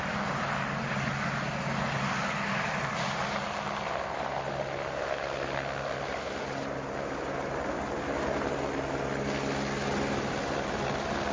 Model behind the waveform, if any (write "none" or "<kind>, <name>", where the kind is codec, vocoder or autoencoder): none